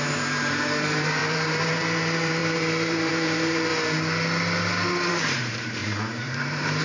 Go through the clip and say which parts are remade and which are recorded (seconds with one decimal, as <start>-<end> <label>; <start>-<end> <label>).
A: 0.0-3.7 remade; 3.7-5.1 recorded; 5.1-6.8 remade